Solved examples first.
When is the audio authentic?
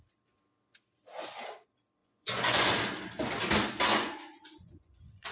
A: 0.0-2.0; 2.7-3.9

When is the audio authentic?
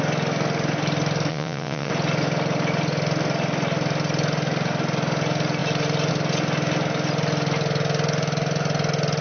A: 0.0-1.3; 1.9-9.2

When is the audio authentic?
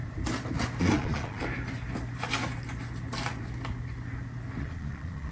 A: 0.0-0.8; 1.4-4.6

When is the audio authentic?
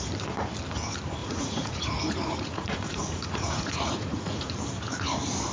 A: 0.0-1.2; 4.5-5.5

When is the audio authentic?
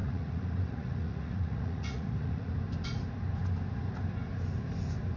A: 2.5-5.2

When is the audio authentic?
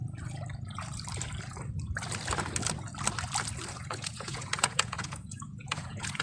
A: 0.0-3.7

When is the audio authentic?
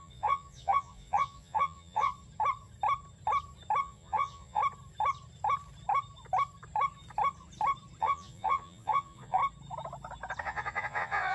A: 2.1-3.8; 4.6-8.0; 9.4-10.4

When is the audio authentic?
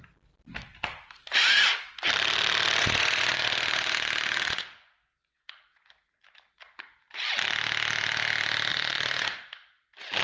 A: 0.0-2.8; 6.0-8.7; 9.4-10.2